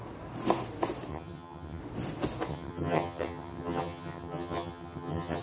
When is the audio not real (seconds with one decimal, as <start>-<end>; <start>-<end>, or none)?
1.1-1.8; 2.5-5.4